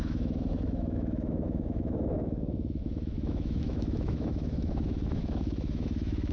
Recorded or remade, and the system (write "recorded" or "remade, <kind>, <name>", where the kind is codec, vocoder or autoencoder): remade, autoencoder, DAC-VAE